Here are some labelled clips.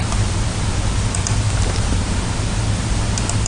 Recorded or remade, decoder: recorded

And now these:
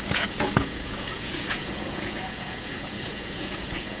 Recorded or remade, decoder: remade, vocoder, Vocos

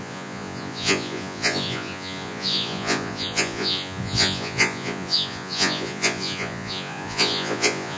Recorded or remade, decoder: remade, vocoder, Vocos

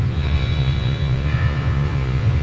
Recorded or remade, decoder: remade, vocoder, Vocos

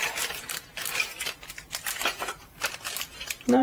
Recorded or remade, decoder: remade, vocoder, BigVGAN v2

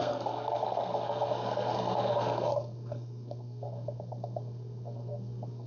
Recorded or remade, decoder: remade, codec, SNAC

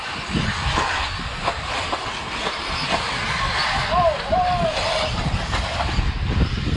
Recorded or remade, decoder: recorded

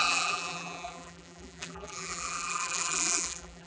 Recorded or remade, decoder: remade, vocoder, BigVGAN v2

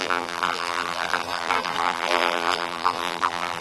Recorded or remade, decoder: remade, vocoder, BigVGAN v2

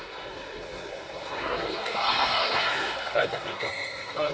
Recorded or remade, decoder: remade, codec, SNAC